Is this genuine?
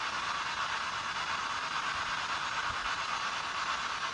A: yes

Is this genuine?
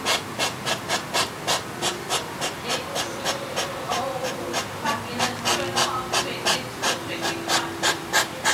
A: yes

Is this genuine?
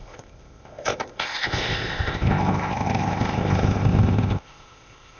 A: no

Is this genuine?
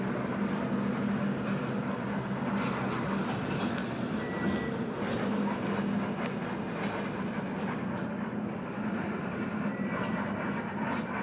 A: yes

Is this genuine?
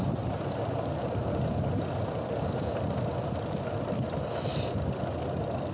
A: yes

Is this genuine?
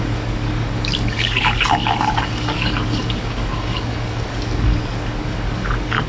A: no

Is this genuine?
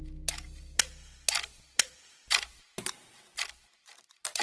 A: yes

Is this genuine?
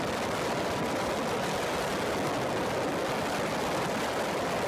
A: yes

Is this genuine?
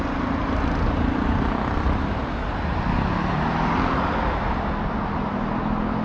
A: yes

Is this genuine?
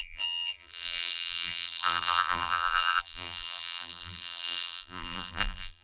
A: no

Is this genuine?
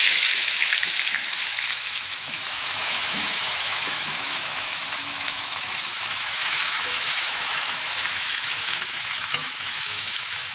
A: no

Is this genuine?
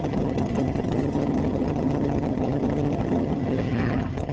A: no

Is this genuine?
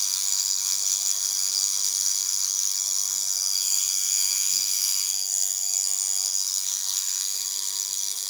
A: no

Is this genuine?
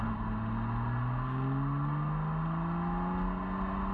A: yes